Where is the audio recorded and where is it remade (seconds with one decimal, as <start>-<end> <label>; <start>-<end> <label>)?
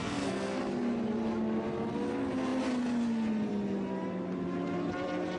0.0-0.6 remade; 0.6-5.4 recorded